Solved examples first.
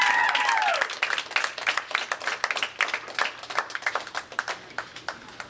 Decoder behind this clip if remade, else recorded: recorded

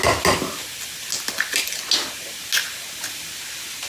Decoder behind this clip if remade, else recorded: recorded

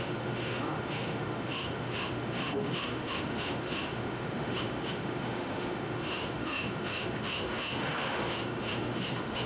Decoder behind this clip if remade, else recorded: remade, autoencoder, DAC-VAE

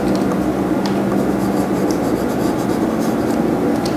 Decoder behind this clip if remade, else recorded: recorded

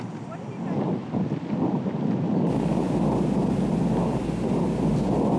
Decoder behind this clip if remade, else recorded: recorded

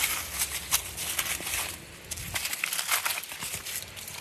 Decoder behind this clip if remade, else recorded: recorded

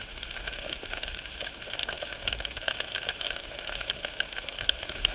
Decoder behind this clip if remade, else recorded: remade, autoencoder, DAC-VAE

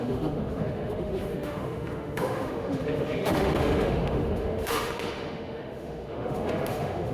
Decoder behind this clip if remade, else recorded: remade, autoencoder, DAC-VAE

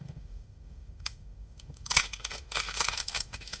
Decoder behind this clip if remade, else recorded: remade, autoencoder, DAC-VAE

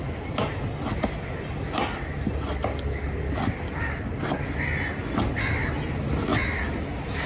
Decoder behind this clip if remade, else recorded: recorded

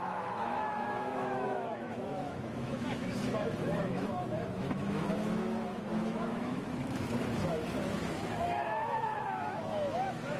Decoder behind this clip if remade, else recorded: remade, autoencoder, DAC-VAE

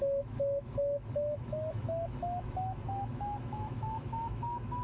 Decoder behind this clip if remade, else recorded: remade, autoencoder, DAC-VAE